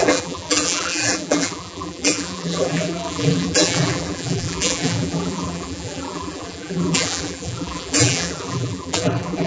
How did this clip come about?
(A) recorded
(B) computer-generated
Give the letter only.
B